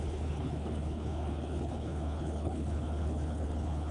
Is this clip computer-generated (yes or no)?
yes